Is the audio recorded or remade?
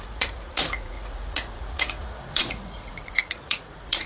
remade